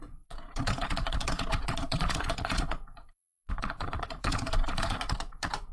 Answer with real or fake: fake